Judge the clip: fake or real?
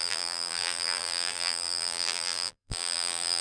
fake